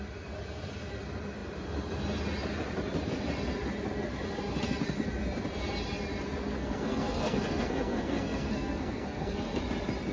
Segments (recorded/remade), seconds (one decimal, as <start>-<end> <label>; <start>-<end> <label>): 0.0-6.6 recorded; 6.6-9.6 remade; 9.6-10.1 recorded